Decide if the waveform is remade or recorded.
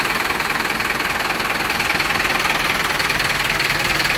remade